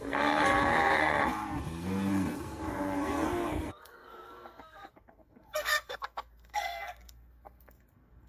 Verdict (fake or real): fake